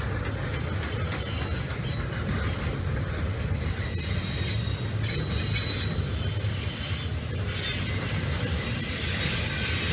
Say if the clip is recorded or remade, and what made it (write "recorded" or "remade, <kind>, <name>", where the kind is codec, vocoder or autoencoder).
recorded